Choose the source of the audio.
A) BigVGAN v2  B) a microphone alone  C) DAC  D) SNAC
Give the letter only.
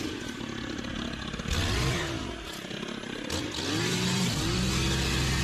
B